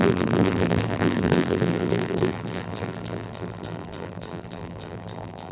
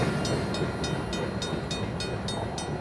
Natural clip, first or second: second